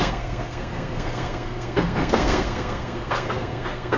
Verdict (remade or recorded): remade